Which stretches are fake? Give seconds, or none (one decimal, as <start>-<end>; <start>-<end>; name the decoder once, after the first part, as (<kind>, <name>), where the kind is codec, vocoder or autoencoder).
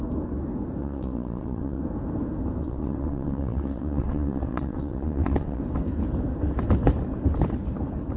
0.8-1.8 (vocoder, WaveNeXt); 2.6-5.6